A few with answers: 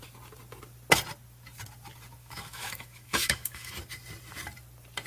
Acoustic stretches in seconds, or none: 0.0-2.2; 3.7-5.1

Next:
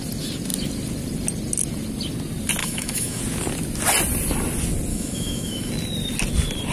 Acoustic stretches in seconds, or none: 0.0-2.6; 3.2-4.9; 5.7-6.7

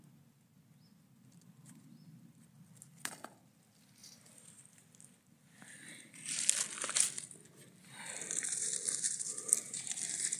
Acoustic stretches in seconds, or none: 0.0-10.4

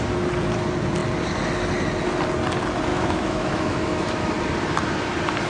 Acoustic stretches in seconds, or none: 0.0-2.9; 4.3-5.5

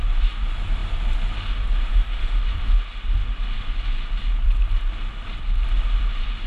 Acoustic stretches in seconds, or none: 0.0-1.9; 2.4-6.5

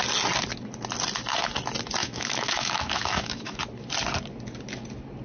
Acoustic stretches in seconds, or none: 0.0-2.0; 3.6-5.2